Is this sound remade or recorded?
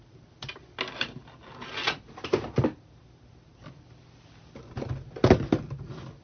recorded